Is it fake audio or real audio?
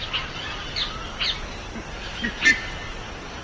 real